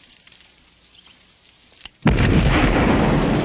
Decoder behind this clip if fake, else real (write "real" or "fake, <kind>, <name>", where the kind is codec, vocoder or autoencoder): fake, vocoder, BigVGAN v2